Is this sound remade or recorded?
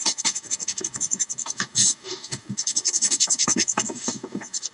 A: remade